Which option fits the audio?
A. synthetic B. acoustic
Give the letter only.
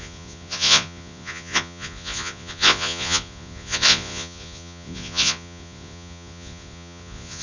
A